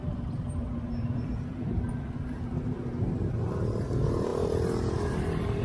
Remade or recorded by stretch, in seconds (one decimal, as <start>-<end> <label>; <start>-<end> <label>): 0.0-5.6 recorded